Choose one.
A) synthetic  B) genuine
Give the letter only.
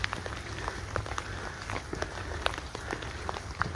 B